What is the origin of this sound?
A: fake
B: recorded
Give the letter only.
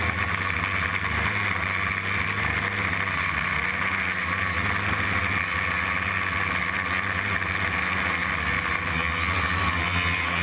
B